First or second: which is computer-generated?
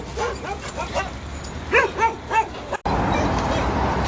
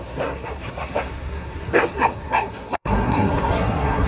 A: second